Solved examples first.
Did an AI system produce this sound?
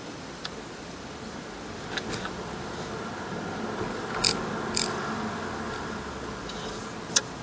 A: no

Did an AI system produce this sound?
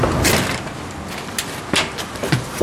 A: no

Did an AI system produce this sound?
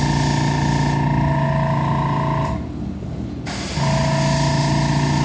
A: no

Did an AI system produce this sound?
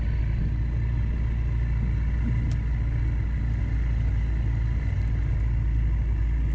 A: no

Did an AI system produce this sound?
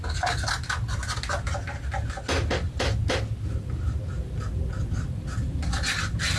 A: no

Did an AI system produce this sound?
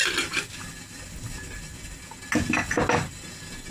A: no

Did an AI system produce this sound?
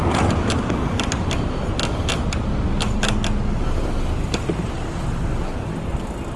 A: no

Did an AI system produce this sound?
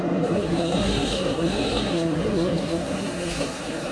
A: yes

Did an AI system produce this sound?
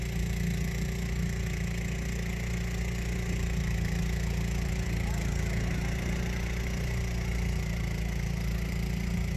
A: no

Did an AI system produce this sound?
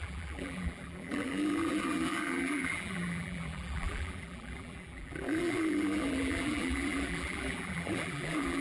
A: yes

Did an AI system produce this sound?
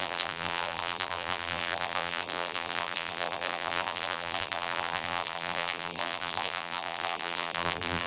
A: yes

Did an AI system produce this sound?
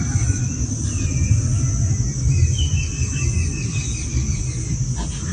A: no